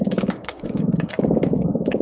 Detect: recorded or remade remade